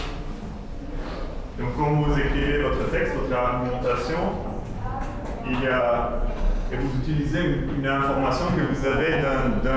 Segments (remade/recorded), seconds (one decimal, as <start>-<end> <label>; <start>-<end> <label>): 0.0-8.6 recorded; 8.6-9.3 remade; 9.3-9.8 recorded